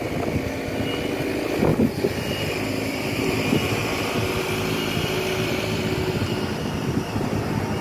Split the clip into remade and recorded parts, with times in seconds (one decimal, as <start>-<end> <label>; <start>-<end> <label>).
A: 0.0-1.7 recorded; 1.7-6.4 remade; 6.4-7.8 recorded